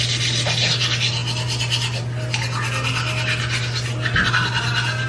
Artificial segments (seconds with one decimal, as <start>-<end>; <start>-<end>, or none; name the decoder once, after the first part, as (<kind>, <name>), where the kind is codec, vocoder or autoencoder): none

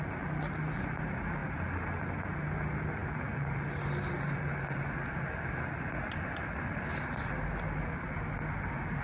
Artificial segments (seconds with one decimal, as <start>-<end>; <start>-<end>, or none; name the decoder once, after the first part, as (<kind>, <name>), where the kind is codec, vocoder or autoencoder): none

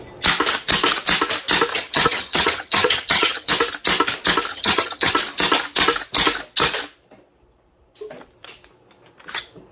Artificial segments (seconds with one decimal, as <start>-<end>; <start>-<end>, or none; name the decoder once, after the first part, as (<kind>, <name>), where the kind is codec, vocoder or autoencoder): 1.7-3.5 (vocoder, HiFi-GAN); 4.5-5.1

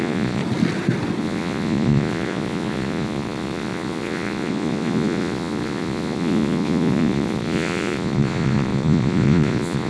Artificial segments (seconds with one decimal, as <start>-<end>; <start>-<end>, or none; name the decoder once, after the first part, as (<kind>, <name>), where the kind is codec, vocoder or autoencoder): 0.0-0.4 (vocoder, Vocos); 1.2-9.9